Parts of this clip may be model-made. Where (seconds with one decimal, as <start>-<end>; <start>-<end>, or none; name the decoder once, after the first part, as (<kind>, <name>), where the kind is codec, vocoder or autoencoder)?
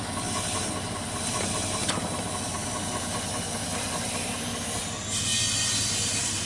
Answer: none